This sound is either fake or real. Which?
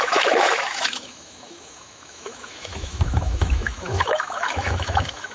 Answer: fake